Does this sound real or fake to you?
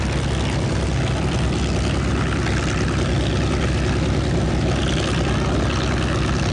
real